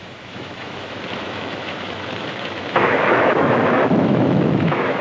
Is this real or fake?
fake